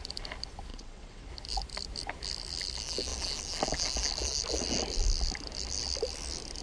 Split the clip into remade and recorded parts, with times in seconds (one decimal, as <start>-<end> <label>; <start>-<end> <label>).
0.0-0.7 recorded; 0.7-1.3 remade; 1.3-6.6 recorded